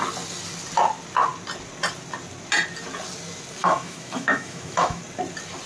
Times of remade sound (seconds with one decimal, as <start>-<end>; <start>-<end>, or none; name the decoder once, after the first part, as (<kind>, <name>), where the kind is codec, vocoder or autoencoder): 3.6-5.0 (autoencoder, DAC-VAE)